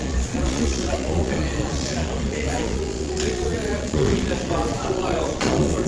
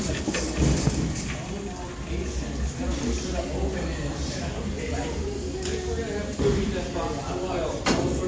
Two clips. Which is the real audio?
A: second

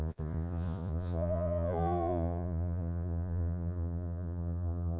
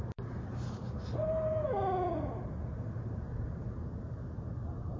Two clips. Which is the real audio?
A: second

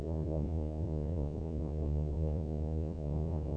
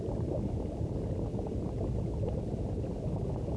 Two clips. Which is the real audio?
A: second